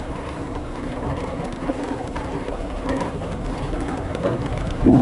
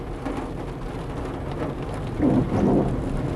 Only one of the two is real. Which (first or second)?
second